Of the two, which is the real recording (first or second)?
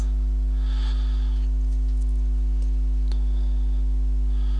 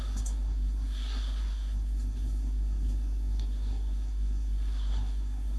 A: first